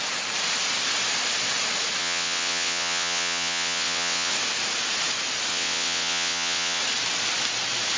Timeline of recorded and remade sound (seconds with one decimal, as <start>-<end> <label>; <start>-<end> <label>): 0.0-2.0 recorded; 2.0-4.3 remade; 4.3-5.5 recorded; 5.5-6.8 remade; 6.8-8.0 recorded

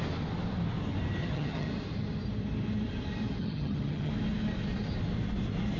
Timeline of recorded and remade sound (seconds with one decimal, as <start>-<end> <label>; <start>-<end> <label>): 0.0-1.2 recorded; 1.2-1.7 remade; 1.7-3.4 recorded; 3.4-4.1 remade; 4.1-5.8 recorded

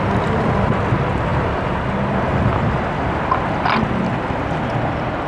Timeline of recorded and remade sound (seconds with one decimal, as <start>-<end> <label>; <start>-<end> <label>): 0.0-5.3 recorded

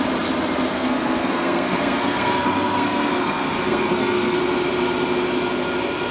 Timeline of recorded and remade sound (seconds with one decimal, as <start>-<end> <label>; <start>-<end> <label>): 0.0-0.7 recorded; 0.7-4.4 remade; 4.4-6.1 recorded

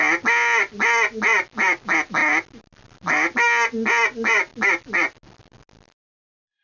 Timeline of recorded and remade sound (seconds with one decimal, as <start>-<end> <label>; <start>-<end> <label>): 0.0-6.6 recorded

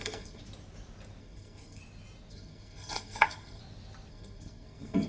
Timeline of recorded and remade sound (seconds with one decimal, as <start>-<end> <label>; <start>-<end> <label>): 0.0-0.4 remade; 0.4-1.2 recorded; 1.2-1.8 remade; 1.8-2.3 recorded; 2.3-3.6 remade; 3.6-4.1 recorded; 4.1-5.1 remade